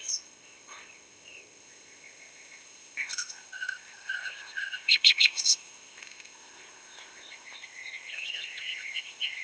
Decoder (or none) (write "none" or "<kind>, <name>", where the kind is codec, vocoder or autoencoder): codec, ZipCodec